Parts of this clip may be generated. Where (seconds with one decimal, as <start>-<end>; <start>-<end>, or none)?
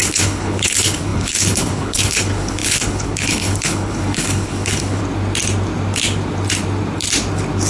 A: 0.0-5.0